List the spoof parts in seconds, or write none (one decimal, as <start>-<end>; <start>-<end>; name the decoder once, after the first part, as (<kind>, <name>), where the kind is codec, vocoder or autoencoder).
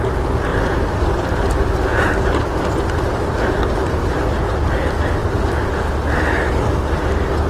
0.5-3.7 (vocoder, BigVGAN v2); 5.2-5.8